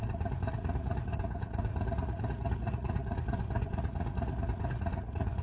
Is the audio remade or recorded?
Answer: remade